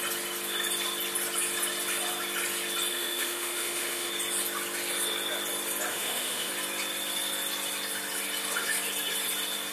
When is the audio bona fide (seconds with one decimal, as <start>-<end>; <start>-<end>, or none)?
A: 0.0-2.9; 4.1-5.9; 6.5-9.7